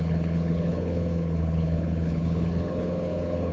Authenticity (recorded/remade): remade